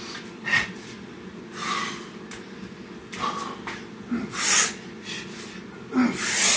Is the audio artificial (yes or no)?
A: no